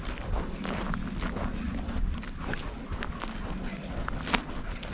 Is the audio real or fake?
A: real